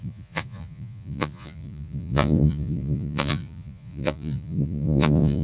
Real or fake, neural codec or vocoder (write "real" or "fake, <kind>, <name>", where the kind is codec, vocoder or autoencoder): fake, vocoder, Vocos